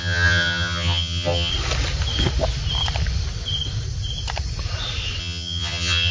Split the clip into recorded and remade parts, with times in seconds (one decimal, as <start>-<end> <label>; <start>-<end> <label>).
0.0-1.5 remade; 1.5-5.2 recorded; 5.2-6.1 remade